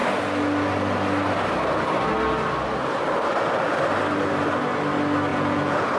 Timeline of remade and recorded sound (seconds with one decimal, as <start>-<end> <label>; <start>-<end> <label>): 0.0-5.3 recorded; 5.3-6.0 remade